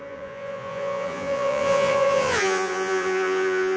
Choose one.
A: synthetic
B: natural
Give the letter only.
A